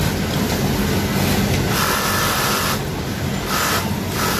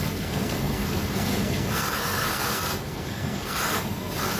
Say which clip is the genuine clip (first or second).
first